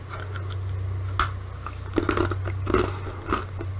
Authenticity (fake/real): real